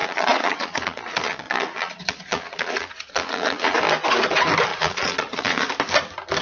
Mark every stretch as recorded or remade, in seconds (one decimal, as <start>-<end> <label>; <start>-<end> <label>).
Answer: 0.0-3.8 remade; 3.8-4.7 recorded; 4.7-5.7 remade; 5.7-6.4 recorded